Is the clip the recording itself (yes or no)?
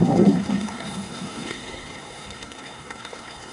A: no